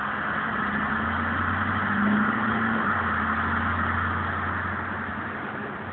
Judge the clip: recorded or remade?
recorded